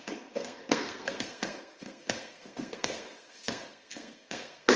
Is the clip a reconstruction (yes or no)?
yes